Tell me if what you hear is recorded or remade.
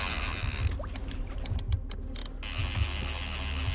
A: recorded